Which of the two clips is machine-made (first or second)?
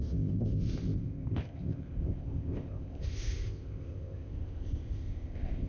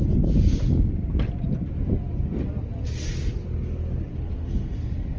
first